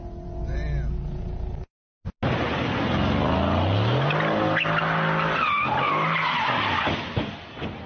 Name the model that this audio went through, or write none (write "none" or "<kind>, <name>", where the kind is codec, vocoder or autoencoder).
none